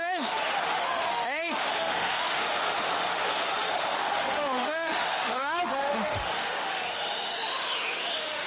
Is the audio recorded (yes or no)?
no